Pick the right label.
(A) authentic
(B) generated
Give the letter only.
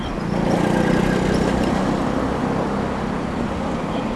A